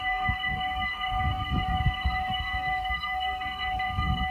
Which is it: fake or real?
fake